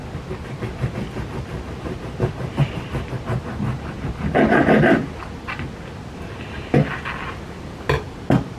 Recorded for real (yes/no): yes